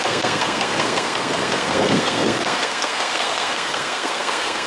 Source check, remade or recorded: remade